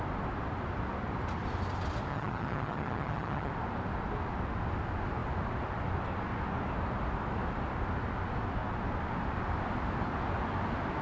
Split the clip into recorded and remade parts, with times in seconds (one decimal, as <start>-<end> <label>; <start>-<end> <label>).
0.0-2.1 recorded; 2.1-3.5 remade; 3.5-11.0 recorded